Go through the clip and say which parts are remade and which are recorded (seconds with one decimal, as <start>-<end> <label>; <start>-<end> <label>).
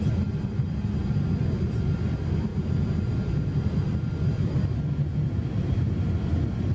0.0-6.7 recorded